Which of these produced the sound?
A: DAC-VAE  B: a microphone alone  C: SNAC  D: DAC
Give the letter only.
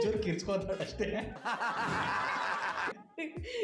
B